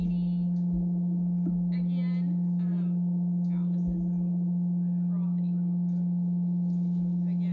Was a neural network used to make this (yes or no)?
no